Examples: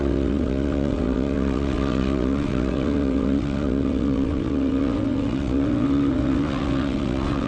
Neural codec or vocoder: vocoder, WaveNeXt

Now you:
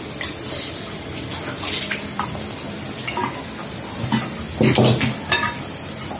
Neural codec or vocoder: none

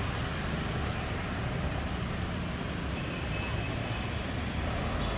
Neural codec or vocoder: none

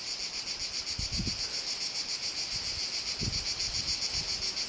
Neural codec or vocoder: none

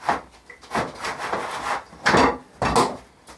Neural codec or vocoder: none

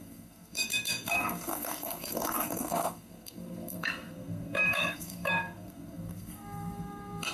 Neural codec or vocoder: codec, SNAC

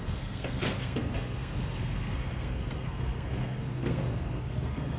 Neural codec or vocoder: codec, SNAC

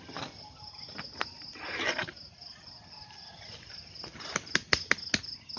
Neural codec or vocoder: none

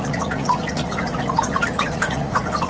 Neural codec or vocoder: vocoder, Vocos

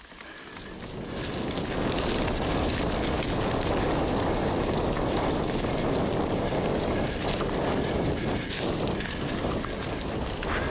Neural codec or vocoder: none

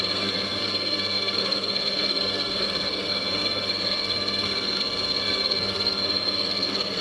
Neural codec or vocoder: codec, SNAC